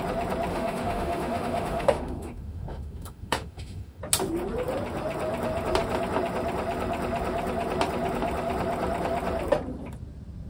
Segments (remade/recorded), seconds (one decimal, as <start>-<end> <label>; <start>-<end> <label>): 0.0-0.5 recorded; 0.5-4.0 remade; 4.0-10.5 recorded

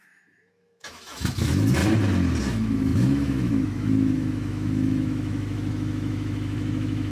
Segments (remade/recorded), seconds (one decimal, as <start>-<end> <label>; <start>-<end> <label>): 0.0-1.8 remade; 1.8-2.4 recorded; 2.4-7.1 remade

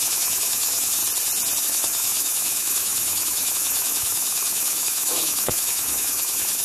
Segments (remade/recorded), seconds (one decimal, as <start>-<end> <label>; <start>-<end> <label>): 0.0-1.0 remade; 1.0-1.6 recorded; 1.6-6.6 remade